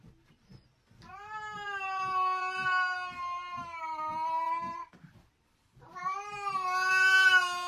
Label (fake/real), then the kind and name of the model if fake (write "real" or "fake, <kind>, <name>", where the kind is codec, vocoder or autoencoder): real